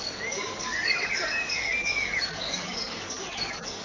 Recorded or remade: remade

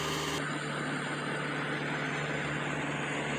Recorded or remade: recorded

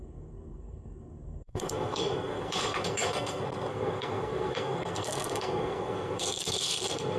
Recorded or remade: remade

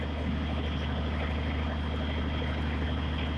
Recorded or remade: recorded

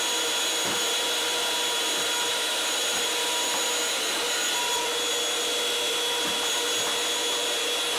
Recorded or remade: recorded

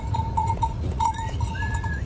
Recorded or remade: remade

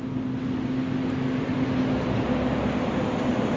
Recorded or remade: recorded